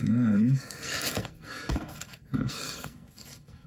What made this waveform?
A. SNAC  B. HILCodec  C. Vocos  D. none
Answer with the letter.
A